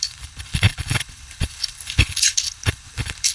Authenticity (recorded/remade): remade